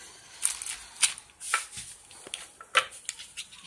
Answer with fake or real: real